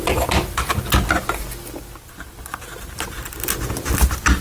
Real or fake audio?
real